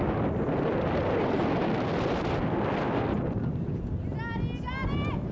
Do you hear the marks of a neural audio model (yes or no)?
no